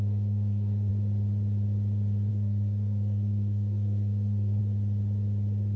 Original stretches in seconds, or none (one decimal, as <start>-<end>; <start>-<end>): 0.9-2.3; 4.6-5.8